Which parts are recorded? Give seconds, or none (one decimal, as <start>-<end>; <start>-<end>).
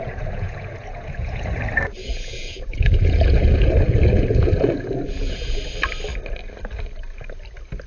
1.6-2.0; 5.6-7.9